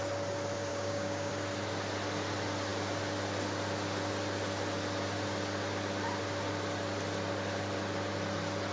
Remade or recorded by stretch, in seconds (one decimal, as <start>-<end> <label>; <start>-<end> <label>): 0.0-0.7 recorded; 0.7-1.3 remade; 1.3-8.7 recorded